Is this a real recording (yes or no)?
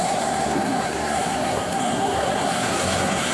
no